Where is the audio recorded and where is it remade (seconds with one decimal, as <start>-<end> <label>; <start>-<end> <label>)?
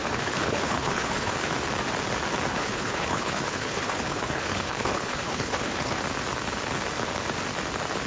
0.0-1.5 remade; 1.5-2.5 recorded; 2.5-6.0 remade; 6.0-8.1 recorded